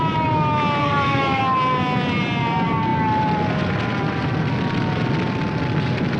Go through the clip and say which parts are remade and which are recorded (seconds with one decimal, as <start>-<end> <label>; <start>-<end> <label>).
0.0-0.8 recorded; 0.8-1.4 remade; 1.4-6.2 recorded